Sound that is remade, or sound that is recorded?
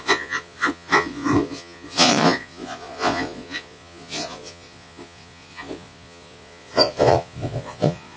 remade